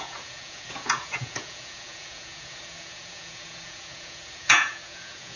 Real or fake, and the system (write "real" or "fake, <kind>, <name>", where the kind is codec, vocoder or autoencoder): fake, vocoder, Vocos